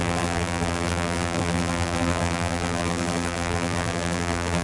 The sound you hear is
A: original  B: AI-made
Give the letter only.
B